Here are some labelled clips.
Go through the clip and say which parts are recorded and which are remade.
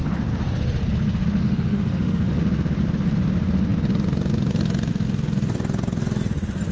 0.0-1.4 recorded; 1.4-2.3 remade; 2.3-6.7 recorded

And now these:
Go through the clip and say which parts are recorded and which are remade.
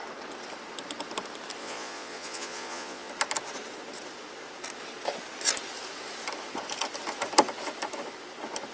0.0-1.6 recorded; 1.6-3.1 remade; 3.1-8.7 recorded